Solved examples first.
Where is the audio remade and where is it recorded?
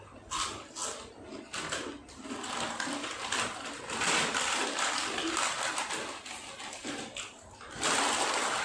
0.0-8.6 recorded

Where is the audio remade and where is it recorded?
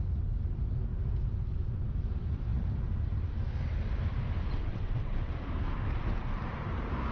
0.0-4.7 recorded; 4.7-5.3 remade; 5.3-7.1 recorded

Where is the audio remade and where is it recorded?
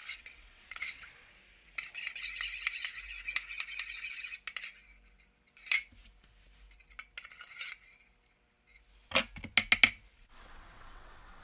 0.0-1.3 remade; 1.3-10.1 recorded; 10.1-11.4 remade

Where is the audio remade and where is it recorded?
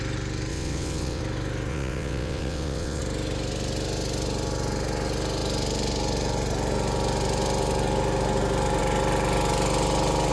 0.0-0.5 recorded; 0.5-1.2 remade; 1.2-1.7 recorded; 1.7-3.0 remade; 3.0-10.3 recorded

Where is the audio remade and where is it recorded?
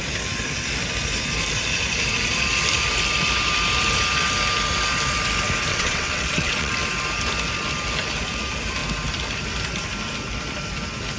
0.0-5.7 recorded; 5.7-6.7 remade; 6.7-11.2 recorded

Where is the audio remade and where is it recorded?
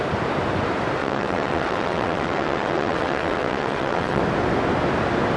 0.0-1.0 recorded; 1.0-4.2 remade; 4.2-5.4 recorded